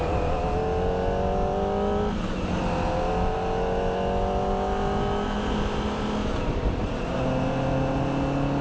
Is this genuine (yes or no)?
yes